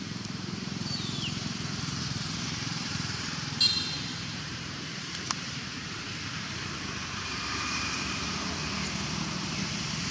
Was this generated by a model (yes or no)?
yes